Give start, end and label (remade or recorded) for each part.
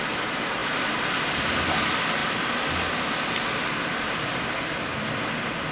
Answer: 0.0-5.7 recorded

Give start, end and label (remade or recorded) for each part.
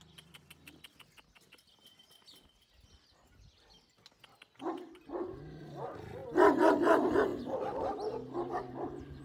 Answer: 0.0-9.2 recorded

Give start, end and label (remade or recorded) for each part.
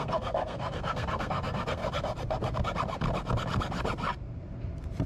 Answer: 0.0-1.8 remade; 1.8-5.1 recorded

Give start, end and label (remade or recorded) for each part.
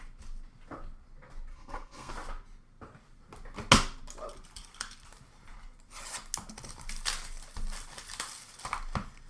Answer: 0.0-1.5 recorded; 1.5-2.1 remade; 2.1-9.3 recorded